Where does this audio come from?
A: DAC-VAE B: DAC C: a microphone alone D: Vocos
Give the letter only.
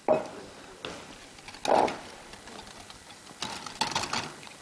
C